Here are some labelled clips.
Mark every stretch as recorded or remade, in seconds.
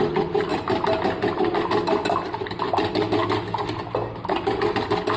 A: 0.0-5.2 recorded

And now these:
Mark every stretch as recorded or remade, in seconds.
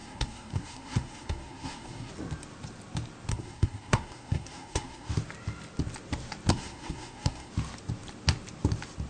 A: 0.0-2.1 remade; 2.1-3.3 recorded; 3.3-5.1 remade; 5.1-6.5 recorded; 6.5-7.5 remade; 7.5-9.1 recorded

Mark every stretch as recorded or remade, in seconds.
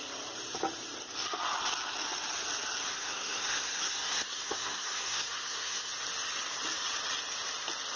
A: 0.0-2.9 recorded; 2.9-5.9 remade; 5.9-8.0 recorded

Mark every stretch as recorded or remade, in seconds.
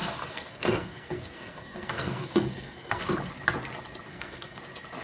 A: 0.0-3.0 remade; 3.0-4.1 recorded; 4.1-4.6 remade; 4.6-5.0 recorded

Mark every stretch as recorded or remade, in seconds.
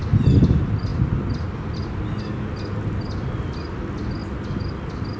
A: 0.0-5.2 recorded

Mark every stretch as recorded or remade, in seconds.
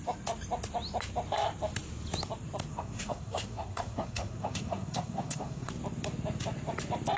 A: 0.0-2.7 recorded; 2.7-5.7 remade; 5.7-7.2 recorded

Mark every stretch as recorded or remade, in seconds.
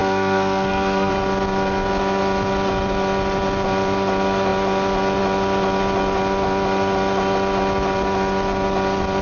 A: 0.0-1.1 remade; 1.1-9.2 recorded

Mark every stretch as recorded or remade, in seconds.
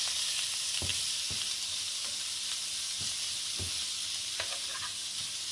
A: 0.0-5.5 recorded